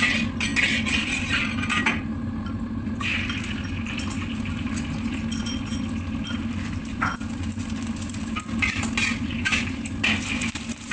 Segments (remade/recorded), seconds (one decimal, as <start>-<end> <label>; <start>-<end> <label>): 0.0-10.9 recorded